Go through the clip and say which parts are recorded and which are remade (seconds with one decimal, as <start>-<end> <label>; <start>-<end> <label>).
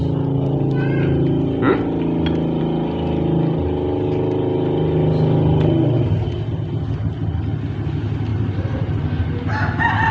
0.0-8.3 recorded; 8.3-8.9 remade; 8.9-10.1 recorded